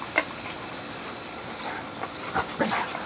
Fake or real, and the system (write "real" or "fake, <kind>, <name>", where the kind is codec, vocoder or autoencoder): real